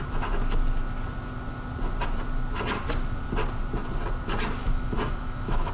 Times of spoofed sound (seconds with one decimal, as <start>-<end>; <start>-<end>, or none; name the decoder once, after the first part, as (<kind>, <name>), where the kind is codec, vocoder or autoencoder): 4.6-5.7 (autoencoder, DAC-VAE)